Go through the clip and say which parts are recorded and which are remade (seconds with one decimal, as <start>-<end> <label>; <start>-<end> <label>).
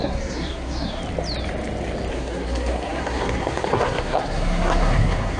0.0-1.0 remade; 1.0-2.1 recorded; 2.1-5.4 remade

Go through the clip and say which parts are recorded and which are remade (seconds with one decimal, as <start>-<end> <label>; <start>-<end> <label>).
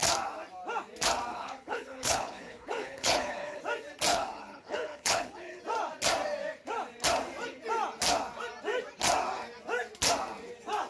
0.0-1.3 recorded; 1.3-3.6 remade; 3.6-4.1 recorded; 4.1-5.6 remade; 5.6-10.9 recorded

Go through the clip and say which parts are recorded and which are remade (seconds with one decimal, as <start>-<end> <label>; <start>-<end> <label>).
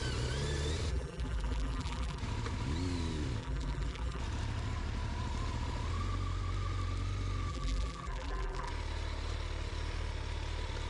0.0-0.9 recorded; 0.9-2.2 remade; 2.2-3.4 recorded; 3.4-4.2 remade; 4.2-7.5 recorded; 7.5-8.7 remade; 8.7-10.9 recorded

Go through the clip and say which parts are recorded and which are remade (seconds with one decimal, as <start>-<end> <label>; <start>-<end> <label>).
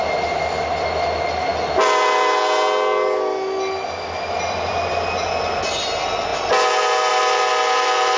0.0-8.2 recorded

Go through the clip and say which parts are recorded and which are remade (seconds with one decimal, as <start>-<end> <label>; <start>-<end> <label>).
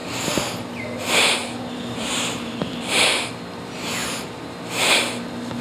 0.0-1.4 recorded; 1.4-3.3 remade; 3.3-4.0 recorded; 4.0-4.6 remade; 4.6-5.6 recorded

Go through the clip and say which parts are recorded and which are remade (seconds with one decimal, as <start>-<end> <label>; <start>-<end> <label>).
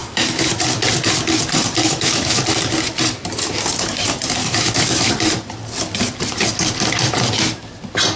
0.0-0.5 remade; 0.5-1.8 recorded; 1.8-2.4 remade; 2.4-4.4 recorded; 4.4-5.1 remade; 5.1-8.2 recorded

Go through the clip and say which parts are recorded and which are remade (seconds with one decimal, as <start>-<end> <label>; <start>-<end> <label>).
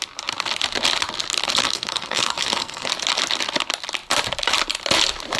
0.0-1.6 recorded; 1.6-2.9 remade; 2.9-5.4 recorded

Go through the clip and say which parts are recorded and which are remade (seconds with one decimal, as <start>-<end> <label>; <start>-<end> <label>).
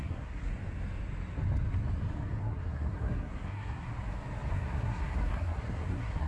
0.0-0.5 remade; 0.5-2.4 recorded; 2.4-3.9 remade; 3.9-4.5 recorded; 4.5-6.3 remade